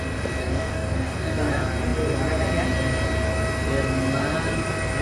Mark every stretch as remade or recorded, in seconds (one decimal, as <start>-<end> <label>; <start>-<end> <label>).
0.0-0.4 recorded; 0.4-1.5 remade; 1.5-5.0 recorded